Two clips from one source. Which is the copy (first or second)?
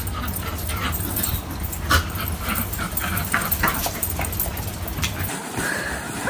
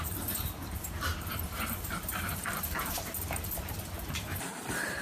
second